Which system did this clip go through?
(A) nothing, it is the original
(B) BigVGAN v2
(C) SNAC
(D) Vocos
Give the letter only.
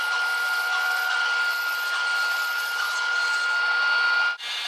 A